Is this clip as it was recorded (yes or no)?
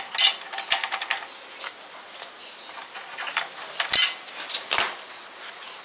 yes